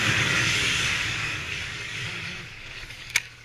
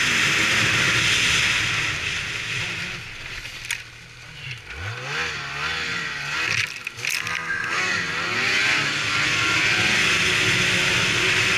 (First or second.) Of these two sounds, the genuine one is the second